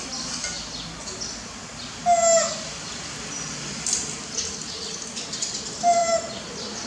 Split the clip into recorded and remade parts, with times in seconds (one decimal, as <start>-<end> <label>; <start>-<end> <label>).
0.0-6.9 recorded